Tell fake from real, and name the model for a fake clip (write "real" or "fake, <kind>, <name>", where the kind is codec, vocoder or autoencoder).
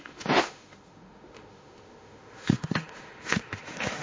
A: fake, autoencoder, DAC-VAE